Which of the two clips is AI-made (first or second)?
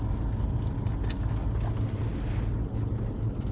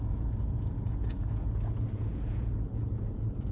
second